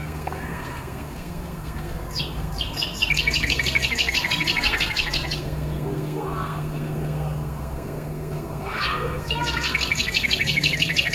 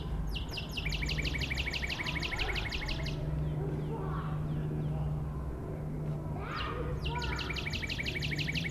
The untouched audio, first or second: second